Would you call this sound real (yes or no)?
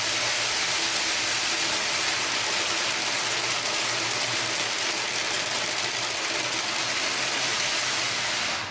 yes